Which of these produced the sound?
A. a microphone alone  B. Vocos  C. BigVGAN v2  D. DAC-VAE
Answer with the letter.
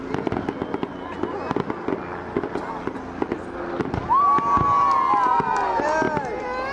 A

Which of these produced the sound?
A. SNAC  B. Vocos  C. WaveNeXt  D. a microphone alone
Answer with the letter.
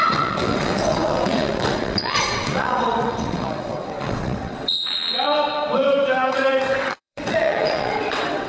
C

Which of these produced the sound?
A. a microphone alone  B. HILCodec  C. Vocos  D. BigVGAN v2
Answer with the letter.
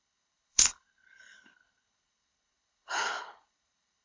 B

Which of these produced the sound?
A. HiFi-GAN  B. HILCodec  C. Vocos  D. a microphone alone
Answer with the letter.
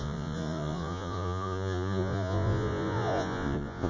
C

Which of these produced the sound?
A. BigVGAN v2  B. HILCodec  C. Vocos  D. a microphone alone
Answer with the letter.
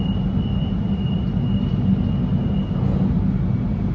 D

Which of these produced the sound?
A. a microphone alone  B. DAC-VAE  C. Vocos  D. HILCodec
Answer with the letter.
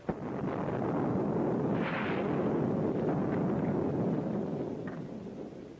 A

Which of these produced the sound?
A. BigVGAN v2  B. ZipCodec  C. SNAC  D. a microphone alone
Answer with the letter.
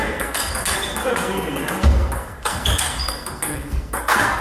C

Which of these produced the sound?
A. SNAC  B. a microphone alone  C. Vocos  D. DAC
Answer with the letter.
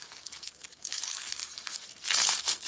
A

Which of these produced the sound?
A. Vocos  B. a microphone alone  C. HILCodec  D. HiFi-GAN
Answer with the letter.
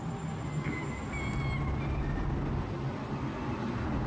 B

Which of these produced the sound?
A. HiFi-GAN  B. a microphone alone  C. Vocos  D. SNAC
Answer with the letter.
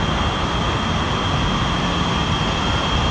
B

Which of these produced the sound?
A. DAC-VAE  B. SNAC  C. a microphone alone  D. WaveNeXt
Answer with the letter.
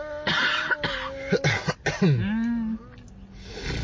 C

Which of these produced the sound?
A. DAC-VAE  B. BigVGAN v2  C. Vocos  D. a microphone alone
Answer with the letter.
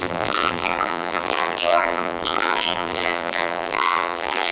B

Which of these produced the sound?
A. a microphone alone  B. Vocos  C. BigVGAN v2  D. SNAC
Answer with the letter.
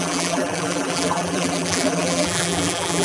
C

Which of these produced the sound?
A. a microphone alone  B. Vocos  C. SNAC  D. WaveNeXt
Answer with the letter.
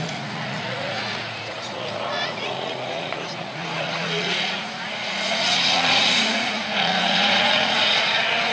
B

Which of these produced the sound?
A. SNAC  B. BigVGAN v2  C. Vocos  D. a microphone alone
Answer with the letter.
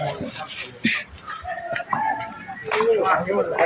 D